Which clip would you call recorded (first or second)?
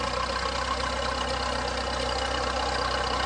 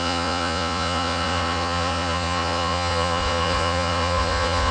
first